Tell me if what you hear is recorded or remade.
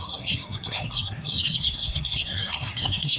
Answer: remade